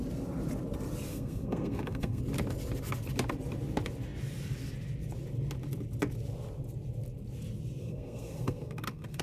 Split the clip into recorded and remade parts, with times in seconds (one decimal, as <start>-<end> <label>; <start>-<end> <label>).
0.0-1.1 recorded; 1.1-2.2 remade; 2.2-7.8 recorded; 7.8-9.2 remade